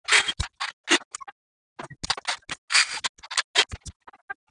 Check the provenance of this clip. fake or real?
real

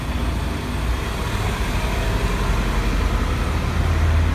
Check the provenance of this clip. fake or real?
real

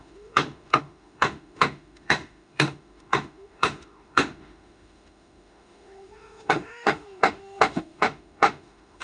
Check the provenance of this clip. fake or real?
fake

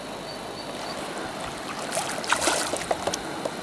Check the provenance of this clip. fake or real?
real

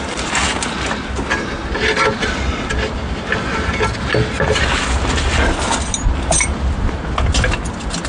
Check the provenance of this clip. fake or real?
real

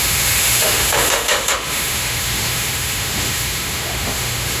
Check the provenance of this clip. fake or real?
fake